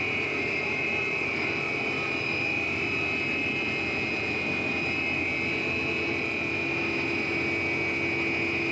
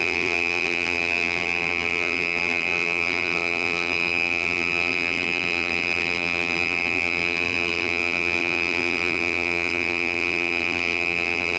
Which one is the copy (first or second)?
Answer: second